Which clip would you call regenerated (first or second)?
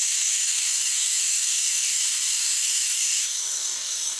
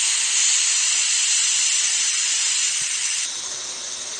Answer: first